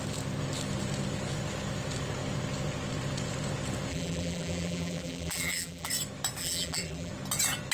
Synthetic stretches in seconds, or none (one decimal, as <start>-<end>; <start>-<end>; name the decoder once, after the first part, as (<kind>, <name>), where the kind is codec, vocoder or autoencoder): 3.9-5.9 (vocoder, BigVGAN v2); 6.4-7.1